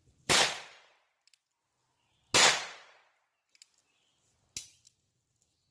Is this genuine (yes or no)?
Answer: yes